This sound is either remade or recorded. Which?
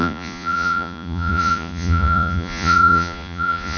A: remade